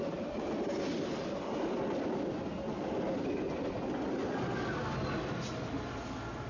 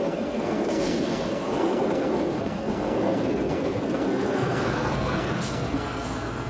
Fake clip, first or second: second